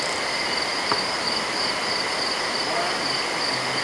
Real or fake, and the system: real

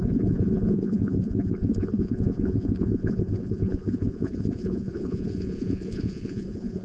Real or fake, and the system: fake, vocoder, Vocos